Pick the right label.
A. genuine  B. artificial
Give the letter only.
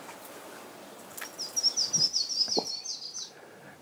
A